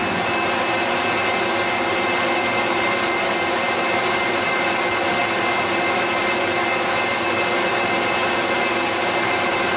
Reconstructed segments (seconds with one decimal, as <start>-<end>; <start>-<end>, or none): none